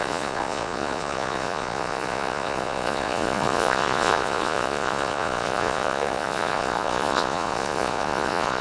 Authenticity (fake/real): fake